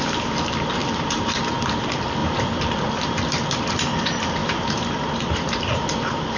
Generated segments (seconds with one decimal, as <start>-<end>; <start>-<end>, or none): 0.8-1.8; 2.2-3.2; 4.4-5.1